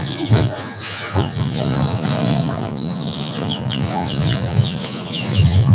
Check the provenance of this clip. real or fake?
fake